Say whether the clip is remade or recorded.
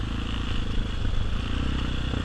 recorded